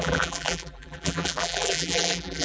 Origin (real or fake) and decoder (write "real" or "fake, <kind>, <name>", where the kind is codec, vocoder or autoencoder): fake, vocoder, BigVGAN v2